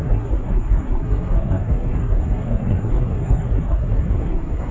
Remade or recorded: remade